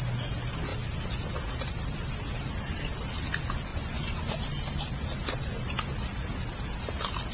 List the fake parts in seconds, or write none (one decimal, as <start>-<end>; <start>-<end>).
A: 3.7-4.3